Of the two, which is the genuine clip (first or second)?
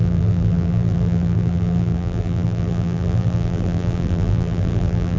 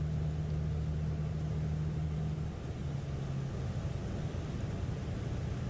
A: second